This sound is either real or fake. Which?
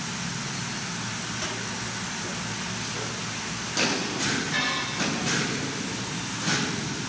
real